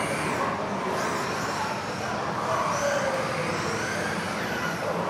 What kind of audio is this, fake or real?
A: real